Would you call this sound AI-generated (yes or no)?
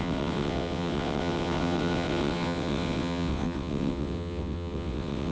yes